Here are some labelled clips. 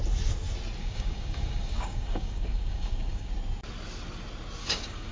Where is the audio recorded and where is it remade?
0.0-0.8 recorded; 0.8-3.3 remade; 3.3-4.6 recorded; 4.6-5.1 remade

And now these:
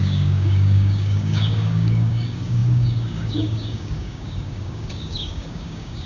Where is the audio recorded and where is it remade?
0.0-6.1 remade